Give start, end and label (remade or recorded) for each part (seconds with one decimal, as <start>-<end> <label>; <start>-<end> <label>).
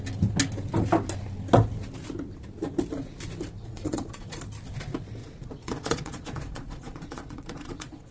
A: 0.0-3.6 recorded; 3.6-4.4 remade; 4.4-5.2 recorded; 5.2-8.1 remade